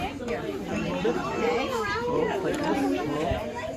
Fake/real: fake